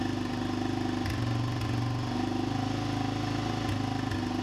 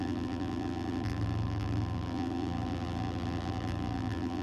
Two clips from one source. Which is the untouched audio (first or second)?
first